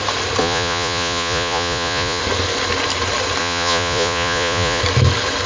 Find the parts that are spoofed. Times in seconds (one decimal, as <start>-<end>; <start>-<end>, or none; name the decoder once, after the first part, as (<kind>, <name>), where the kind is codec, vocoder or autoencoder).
0.4-2.2 (vocoder, Vocos); 3.4-4.8

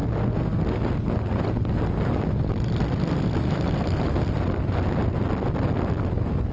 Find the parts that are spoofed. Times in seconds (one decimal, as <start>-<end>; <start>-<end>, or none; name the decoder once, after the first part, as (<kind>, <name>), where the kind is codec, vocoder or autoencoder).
none

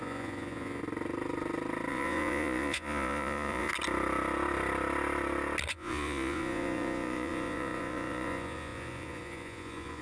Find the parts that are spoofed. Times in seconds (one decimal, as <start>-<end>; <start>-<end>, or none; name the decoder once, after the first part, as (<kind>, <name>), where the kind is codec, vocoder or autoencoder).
0.0-0.8 (vocoder, Vocos); 1.9-3.7; 5.7-10.0

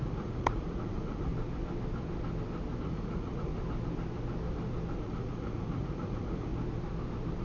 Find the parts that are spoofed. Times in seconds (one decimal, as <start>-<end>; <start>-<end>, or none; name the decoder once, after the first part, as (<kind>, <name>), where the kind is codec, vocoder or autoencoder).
0.0-1.3 (vocoder, Vocos); 2.8-3.5; 5.0-6.5

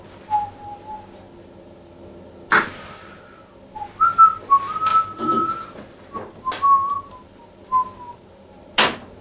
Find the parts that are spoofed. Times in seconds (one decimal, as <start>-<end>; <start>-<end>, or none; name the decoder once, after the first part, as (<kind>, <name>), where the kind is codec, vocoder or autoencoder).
none

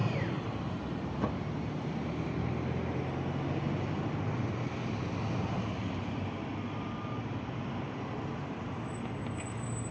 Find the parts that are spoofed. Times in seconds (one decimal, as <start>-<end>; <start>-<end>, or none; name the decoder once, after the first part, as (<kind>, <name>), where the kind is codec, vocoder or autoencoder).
none

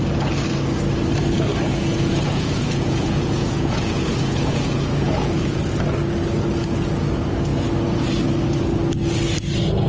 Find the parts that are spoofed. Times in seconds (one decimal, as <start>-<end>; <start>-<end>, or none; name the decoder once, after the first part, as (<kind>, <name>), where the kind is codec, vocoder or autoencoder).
1.7-5.6 (vocoder, Vocos)